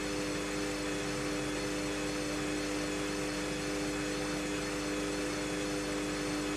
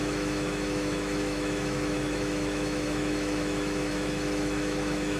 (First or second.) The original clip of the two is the first